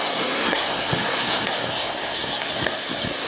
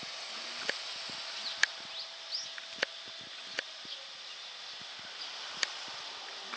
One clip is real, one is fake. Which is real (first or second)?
second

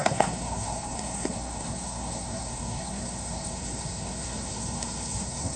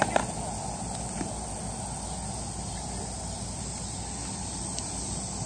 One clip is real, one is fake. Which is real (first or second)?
second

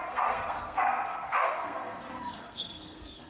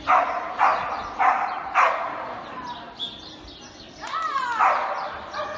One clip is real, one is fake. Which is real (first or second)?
second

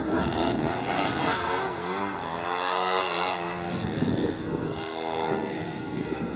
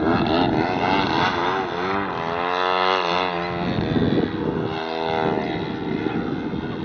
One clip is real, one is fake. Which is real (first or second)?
second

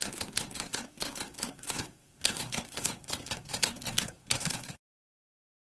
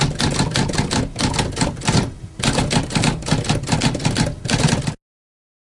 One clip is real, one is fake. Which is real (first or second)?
second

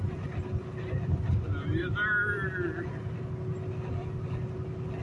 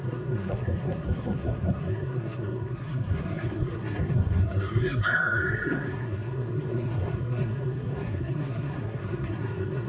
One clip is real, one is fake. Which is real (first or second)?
first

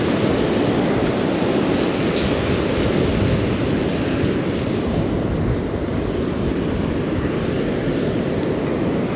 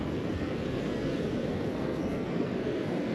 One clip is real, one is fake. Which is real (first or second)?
first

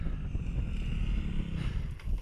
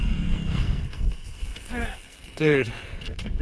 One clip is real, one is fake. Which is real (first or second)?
first